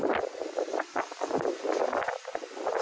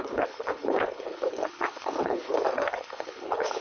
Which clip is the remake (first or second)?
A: second